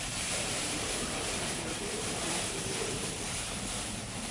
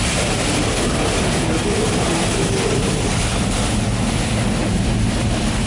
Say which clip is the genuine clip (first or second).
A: second